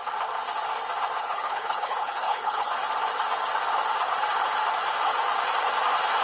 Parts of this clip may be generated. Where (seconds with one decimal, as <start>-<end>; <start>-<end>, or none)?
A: 1.2-2.7